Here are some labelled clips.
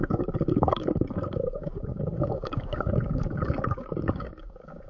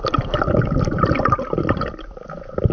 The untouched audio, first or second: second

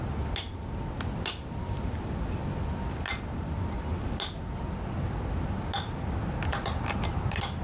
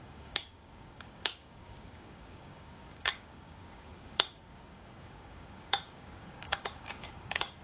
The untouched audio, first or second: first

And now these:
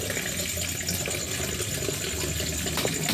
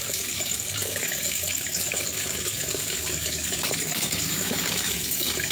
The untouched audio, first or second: first